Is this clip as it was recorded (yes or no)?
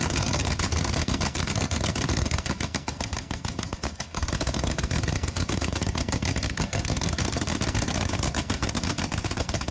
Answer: no